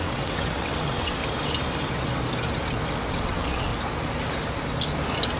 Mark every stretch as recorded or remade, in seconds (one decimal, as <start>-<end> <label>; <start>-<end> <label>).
0.0-1.2 remade; 1.2-3.1 recorded; 3.1-3.7 remade; 3.7-5.4 recorded

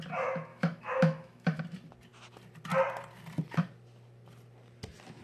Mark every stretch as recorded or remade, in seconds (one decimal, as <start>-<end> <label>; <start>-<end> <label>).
0.0-0.5 recorded; 0.5-1.6 remade; 1.6-5.2 recorded